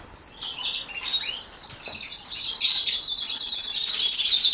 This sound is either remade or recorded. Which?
recorded